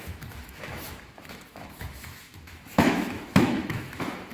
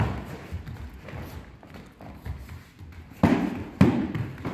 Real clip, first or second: second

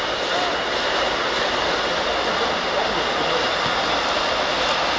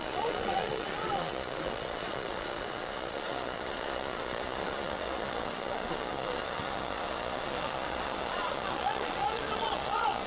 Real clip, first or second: first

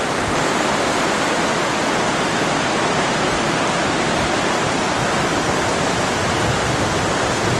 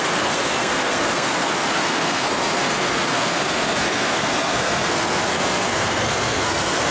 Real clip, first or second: first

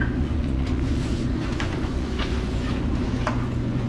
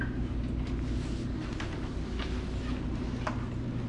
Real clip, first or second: second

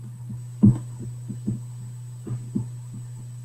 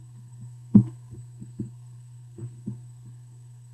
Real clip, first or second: first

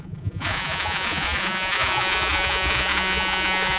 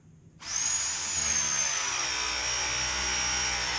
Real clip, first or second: second